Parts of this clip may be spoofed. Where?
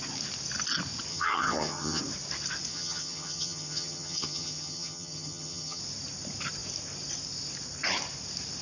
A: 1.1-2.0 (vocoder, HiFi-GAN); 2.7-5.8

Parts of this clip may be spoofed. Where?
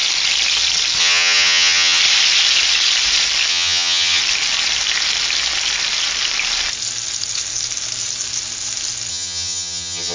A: 1.0-2.0 (vocoder, HiFi-GAN); 3.5-4.2; 9.1-10.1